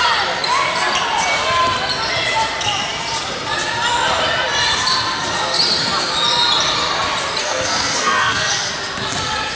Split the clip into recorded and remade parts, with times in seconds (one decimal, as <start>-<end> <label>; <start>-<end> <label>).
0.0-7.4 recorded; 7.4-8.7 remade; 8.7-9.6 recorded